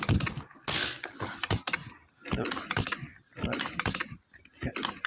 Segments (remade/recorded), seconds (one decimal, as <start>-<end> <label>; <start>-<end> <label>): 0.0-5.1 recorded